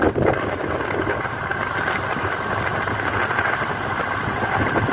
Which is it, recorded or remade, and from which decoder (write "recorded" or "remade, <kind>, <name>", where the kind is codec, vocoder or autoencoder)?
recorded